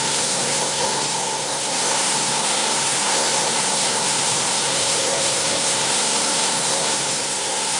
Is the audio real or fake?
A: fake